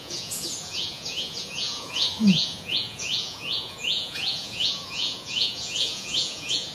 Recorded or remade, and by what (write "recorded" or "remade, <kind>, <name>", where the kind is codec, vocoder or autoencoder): remade, vocoder, Vocos